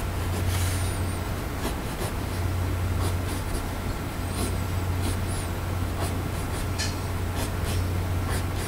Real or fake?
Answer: real